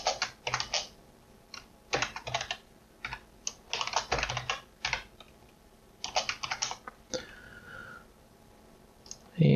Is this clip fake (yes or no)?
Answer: no